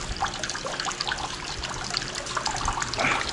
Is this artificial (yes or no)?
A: no